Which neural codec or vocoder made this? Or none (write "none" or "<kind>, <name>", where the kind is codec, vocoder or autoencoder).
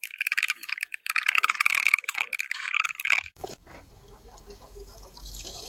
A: codec, DAC